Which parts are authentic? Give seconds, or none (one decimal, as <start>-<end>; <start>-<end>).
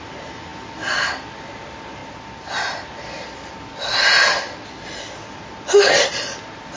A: 0.0-6.8